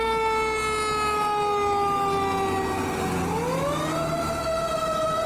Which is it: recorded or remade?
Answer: recorded